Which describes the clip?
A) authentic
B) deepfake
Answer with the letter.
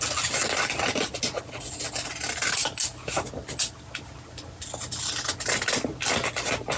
A